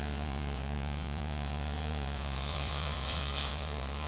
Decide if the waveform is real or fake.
fake